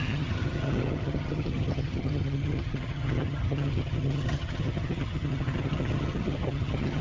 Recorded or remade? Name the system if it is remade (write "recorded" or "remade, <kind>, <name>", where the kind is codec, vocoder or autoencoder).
remade, vocoder, HiFi-GAN